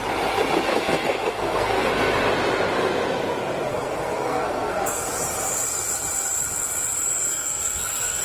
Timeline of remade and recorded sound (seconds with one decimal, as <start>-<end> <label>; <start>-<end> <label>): 0.0-0.7 recorded; 0.7-1.9 remade; 1.9-3.7 recorded; 3.7-5.1 remade; 5.1-7.3 recorded; 7.3-8.2 remade